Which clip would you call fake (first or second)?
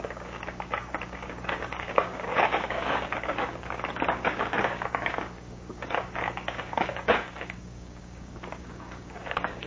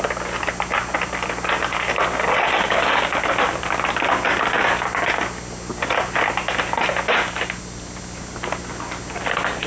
first